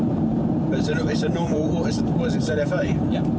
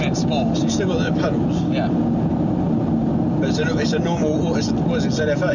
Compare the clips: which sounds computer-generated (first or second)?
first